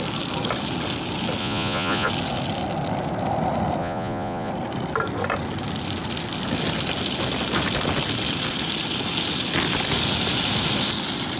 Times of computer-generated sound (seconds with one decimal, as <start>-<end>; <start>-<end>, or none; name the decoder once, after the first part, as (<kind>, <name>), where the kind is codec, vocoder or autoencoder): 1.4-2.1 (vocoder, Vocos); 3.8-4.5